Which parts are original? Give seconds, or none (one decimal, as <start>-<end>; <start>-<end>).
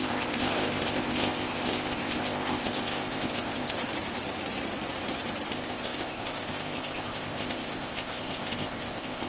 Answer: 3.8-5.5